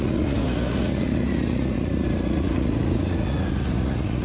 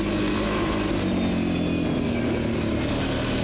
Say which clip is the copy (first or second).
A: first